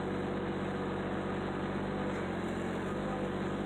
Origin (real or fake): real